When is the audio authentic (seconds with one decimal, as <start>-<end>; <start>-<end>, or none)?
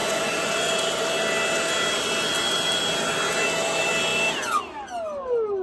0.8-5.6